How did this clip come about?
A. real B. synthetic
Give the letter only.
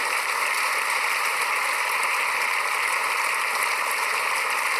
A